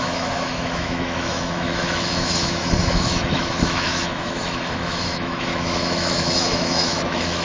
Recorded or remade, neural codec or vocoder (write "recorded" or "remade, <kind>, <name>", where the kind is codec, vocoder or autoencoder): remade, autoencoder, DAC-VAE